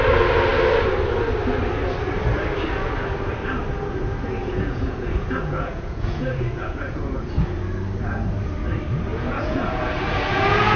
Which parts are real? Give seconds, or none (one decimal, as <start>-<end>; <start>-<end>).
0.0-4.4; 7.6-9.1